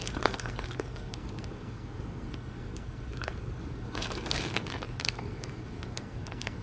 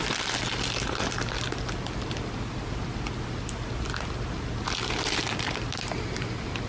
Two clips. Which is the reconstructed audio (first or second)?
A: first